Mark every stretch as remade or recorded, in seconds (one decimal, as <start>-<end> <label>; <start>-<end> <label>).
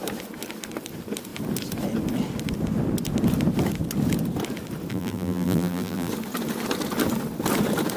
0.0-4.9 recorded; 4.9-6.1 remade; 6.1-8.0 recorded